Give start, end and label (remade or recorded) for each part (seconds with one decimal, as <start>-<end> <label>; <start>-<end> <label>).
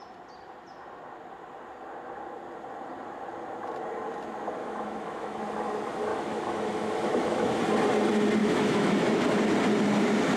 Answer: 0.0-4.6 recorded; 4.6-5.4 remade; 5.4-6.1 recorded; 6.1-7.6 remade; 7.6-8.4 recorded; 8.4-9.2 remade; 9.2-10.4 recorded